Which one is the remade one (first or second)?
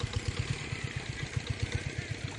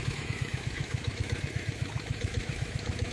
second